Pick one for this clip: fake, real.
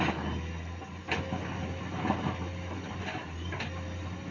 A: real